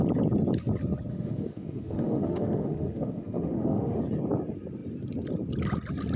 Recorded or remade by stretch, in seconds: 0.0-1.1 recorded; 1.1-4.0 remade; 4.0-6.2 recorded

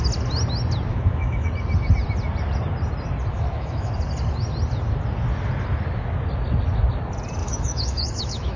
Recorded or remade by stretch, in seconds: 0.0-0.9 recorded; 0.9-1.5 remade; 1.5-3.3 recorded; 3.3-3.9 remade; 3.9-7.4 recorded; 7.4-8.6 remade